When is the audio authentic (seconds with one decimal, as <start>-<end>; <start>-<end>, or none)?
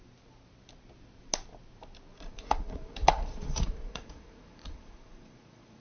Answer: 0.0-2.1